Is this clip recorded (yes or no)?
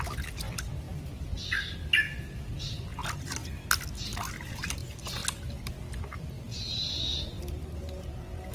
yes